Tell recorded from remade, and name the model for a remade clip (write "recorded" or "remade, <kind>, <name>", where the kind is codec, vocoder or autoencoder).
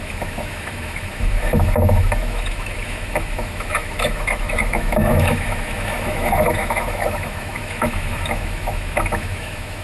remade, autoencoder, DAC-VAE